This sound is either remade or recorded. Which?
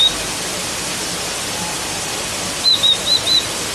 remade